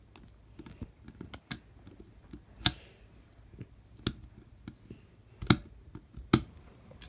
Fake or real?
real